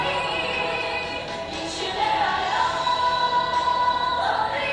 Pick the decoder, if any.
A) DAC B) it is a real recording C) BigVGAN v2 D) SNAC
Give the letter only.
B